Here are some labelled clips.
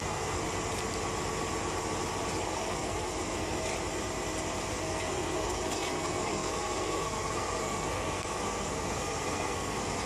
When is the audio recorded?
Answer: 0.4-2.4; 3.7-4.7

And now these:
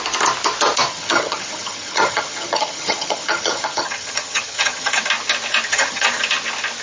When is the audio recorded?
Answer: 0.0-0.9; 5.0-5.7; 6.2-6.8

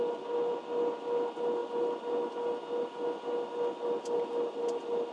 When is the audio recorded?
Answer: 0.0-5.1

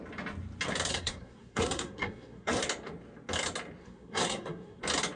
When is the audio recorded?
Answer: 0.0-0.9; 2.6-3.8; 4.8-5.2

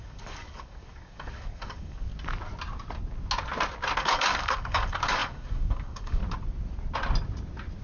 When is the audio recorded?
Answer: 2.1-4.0; 6.2-7.8

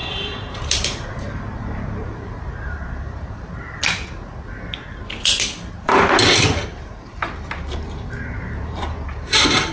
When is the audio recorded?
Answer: 3.6-6.7

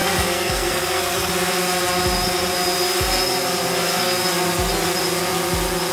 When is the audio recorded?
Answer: 1.3-5.9